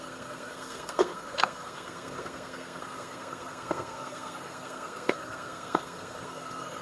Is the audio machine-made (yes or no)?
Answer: yes